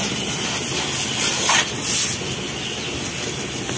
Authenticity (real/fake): real